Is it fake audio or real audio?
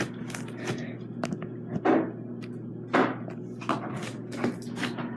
real